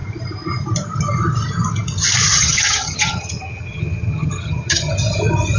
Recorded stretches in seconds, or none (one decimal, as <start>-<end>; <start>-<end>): 0.0-2.3; 4.9-5.6